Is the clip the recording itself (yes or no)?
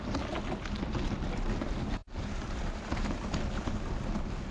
yes